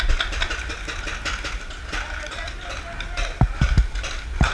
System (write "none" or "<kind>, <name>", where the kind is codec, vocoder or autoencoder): none